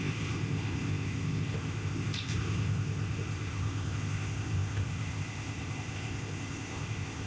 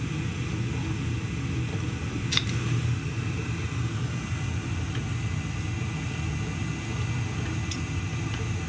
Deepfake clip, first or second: first